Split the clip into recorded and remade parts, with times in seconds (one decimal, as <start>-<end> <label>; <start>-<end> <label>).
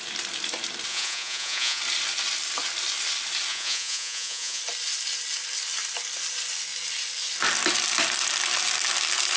0.0-0.9 recorded; 0.9-1.8 remade; 1.8-3.5 recorded; 3.5-4.6 remade; 4.6-9.4 recorded